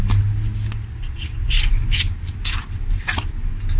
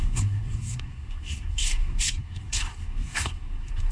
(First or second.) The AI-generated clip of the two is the second